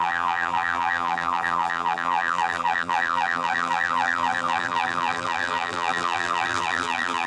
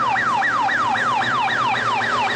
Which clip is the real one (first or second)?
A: second